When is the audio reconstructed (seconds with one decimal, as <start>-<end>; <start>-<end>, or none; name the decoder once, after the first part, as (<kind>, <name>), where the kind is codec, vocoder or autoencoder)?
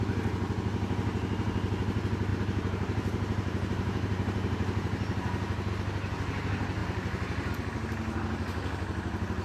2.3-5.7 (vocoder, BigVGAN v2); 6.8-7.5